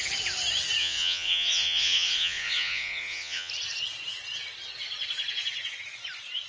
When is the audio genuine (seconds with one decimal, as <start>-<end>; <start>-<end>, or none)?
0.0-0.8; 3.5-6.5